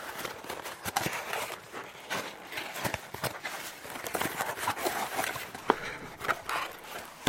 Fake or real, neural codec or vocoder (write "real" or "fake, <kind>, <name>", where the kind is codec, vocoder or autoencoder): real